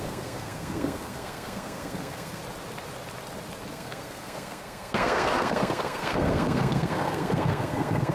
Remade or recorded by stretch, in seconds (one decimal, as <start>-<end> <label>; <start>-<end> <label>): 0.0-2.4 remade; 2.4-3.7 recorded; 3.7-8.1 remade